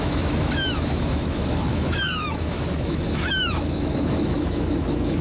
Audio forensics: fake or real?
fake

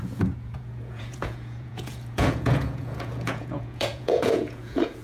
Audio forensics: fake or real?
fake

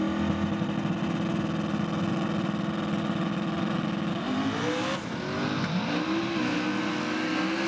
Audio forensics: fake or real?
real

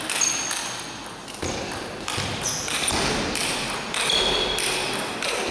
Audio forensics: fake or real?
real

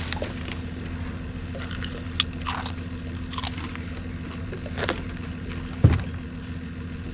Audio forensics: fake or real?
real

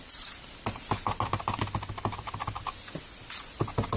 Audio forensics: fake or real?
real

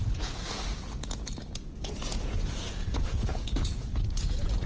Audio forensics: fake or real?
fake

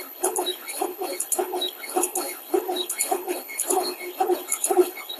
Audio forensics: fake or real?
fake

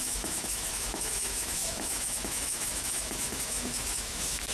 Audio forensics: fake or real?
fake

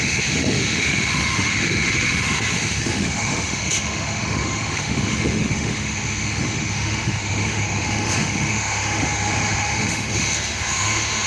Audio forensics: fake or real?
fake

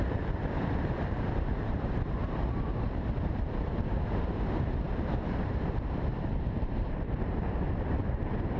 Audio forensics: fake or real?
fake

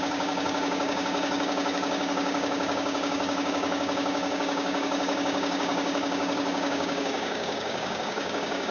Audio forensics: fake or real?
fake